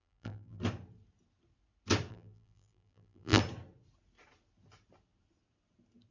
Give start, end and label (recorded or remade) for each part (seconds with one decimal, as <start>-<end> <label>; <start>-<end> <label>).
0.0-0.6 remade; 0.6-2.1 recorded; 2.1-3.4 remade; 3.4-6.1 recorded